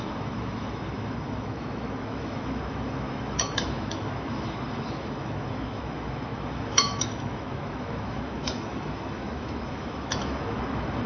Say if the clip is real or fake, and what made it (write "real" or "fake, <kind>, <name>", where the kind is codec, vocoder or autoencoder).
fake, autoencoder, DAC-VAE